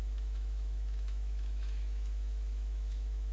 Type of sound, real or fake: fake